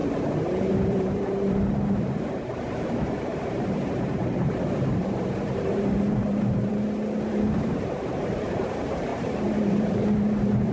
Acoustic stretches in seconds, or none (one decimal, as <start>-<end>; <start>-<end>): 6.7-7.3